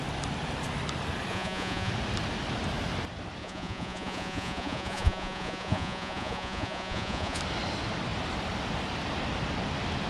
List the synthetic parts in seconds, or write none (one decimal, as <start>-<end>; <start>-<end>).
1.3-1.9; 3.4-7.4